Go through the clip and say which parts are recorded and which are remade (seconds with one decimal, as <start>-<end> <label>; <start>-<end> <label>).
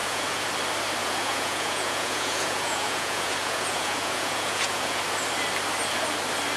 0.0-0.5 remade; 0.5-1.0 recorded; 1.0-5.0 remade; 5.0-6.6 recorded